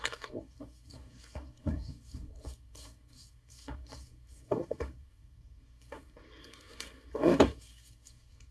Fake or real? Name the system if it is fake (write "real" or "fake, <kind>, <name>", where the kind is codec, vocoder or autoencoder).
fake, codec, SNAC